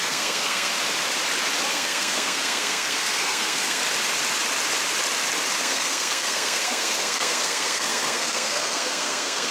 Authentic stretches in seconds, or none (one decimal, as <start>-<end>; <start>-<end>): 0.7-1.7; 3.8-5.6